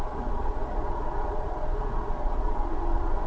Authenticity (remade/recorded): remade